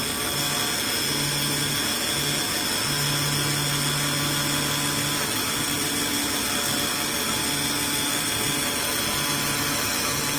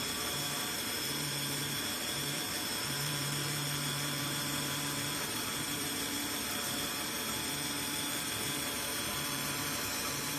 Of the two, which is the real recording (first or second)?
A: first